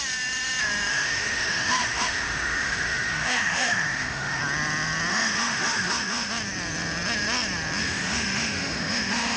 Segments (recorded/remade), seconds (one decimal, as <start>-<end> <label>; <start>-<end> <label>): 0.0-0.9 recorded; 0.9-4.4 remade; 4.4-5.1 recorded; 5.1-6.3 remade; 6.3-7.8 recorded; 7.8-9.4 remade